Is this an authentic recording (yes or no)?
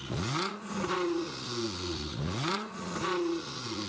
no